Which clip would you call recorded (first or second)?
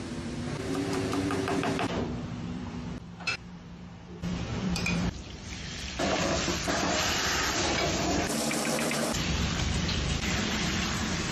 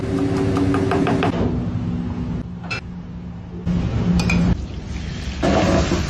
second